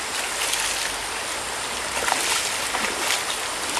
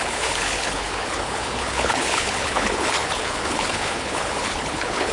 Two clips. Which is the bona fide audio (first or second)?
first